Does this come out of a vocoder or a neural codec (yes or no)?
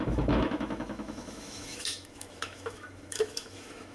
yes